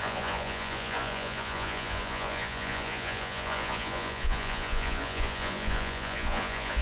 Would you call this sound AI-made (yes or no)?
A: yes